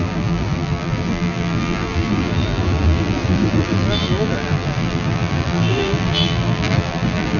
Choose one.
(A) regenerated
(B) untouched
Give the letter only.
A